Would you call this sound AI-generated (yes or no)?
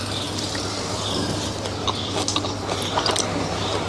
no